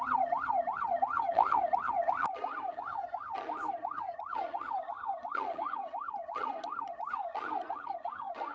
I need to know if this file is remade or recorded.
remade